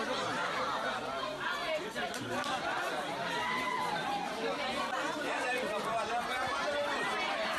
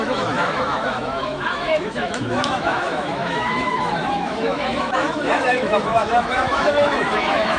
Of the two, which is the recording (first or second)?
first